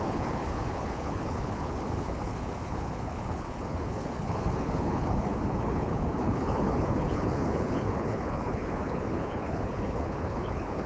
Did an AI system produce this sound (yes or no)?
yes